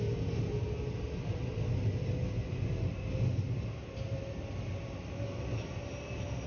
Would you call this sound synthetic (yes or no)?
no